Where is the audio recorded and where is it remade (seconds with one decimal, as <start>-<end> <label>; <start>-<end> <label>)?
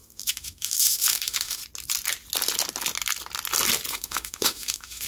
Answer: 0.0-1.6 remade; 1.6-3.9 recorded; 3.9-5.1 remade